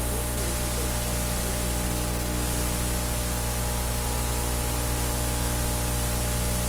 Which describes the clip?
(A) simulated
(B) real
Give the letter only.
B